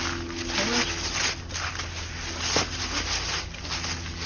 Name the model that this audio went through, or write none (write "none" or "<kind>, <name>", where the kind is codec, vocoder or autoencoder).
none